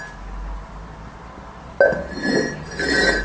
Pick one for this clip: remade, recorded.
recorded